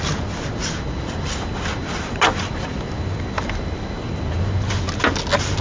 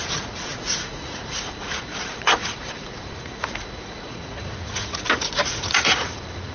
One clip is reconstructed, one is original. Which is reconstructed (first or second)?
second